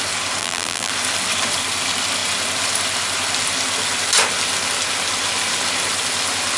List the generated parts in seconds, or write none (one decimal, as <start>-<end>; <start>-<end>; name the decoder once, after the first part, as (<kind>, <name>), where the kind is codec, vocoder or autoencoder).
0.4-0.9 (vocoder, BigVGAN v2)